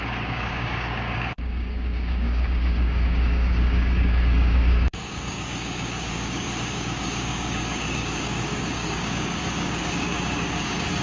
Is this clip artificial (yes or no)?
yes